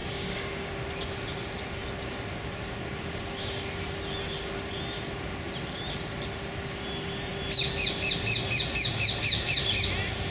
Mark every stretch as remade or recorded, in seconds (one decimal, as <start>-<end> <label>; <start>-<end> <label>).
0.0-0.7 remade; 0.7-10.3 recorded